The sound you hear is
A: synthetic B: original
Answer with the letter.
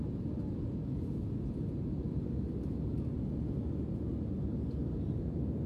B